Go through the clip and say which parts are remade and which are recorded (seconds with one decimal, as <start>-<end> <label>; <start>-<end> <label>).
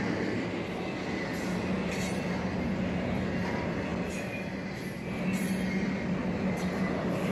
0.0-7.3 recorded